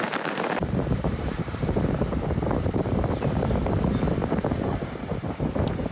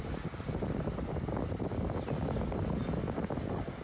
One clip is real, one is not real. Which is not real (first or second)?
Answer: first